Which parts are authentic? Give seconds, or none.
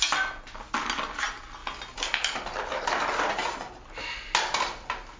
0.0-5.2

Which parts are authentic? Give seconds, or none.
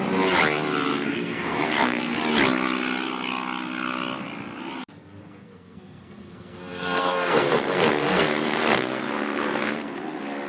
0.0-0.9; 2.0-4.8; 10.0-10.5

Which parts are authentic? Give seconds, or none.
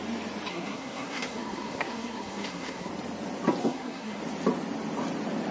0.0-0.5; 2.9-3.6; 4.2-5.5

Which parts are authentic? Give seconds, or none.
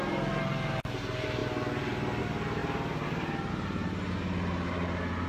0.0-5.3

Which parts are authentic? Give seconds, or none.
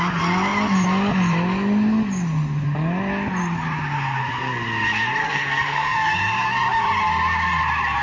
0.0-5.2; 6.1-8.0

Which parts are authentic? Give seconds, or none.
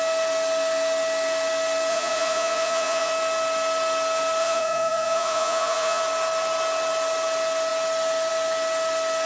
0.0-1.9; 3.1-4.4; 6.0-9.3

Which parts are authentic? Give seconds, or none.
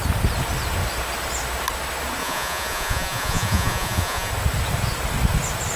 0.0-2.2; 4.3-5.8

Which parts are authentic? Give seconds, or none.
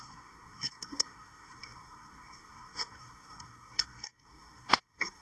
none